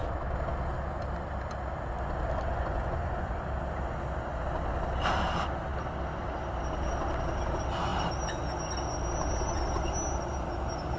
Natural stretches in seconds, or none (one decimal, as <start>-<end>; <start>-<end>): 0.0-2.5; 3.3-11.0

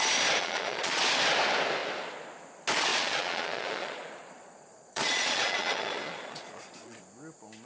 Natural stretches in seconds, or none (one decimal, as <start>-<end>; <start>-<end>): 0.0-0.4; 1.0-2.9; 7.0-7.7

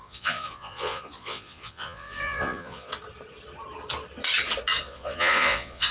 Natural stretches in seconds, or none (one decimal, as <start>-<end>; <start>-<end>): 2.9-4.8

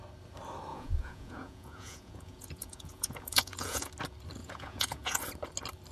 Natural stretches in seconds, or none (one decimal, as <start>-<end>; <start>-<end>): 0.0-0.7; 3.9-4.4; 5.2-5.9

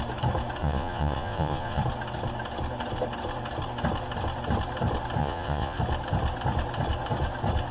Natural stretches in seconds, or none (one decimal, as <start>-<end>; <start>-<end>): 0.0-0.6; 1.8-5.2; 5.8-7.7

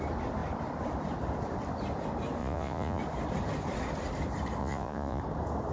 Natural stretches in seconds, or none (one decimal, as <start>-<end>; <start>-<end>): 0.0-2.4; 3.0-4.6; 5.2-5.7

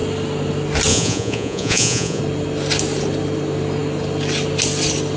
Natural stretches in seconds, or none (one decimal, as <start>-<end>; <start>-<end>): 0.0-0.9; 2.2-5.2